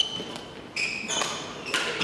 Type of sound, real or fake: real